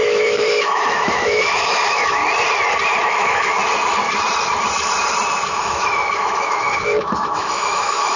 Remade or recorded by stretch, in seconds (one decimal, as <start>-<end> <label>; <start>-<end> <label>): 0.0-2.2 remade; 2.2-3.1 recorded; 3.1-3.6 remade; 3.6-5.6 recorded; 5.6-8.2 remade